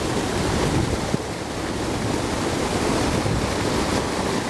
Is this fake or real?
real